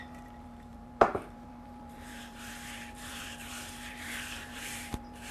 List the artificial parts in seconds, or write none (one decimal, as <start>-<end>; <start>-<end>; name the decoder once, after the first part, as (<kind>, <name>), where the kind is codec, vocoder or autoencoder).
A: 0.0-5.3 (vocoder, BigVGAN v2)